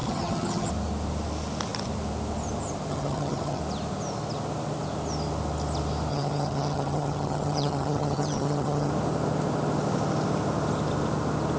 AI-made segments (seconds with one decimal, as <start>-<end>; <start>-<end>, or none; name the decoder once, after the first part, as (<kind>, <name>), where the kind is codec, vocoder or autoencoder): 0.0-0.7 (vocoder, HiFi-GAN); 2.9-3.6; 6.1-8.9